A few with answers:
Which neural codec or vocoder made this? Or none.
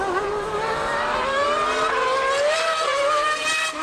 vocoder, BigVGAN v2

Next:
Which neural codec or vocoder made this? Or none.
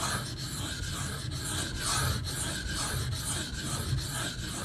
none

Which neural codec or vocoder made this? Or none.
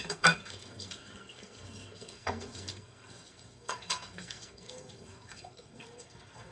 codec, SNAC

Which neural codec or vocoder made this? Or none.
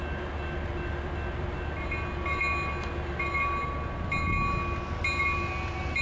none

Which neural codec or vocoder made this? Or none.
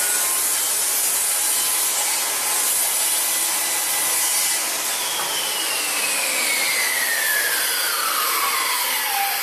none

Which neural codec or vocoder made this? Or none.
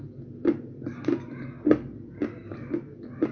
none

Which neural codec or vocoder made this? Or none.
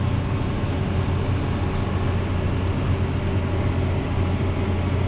none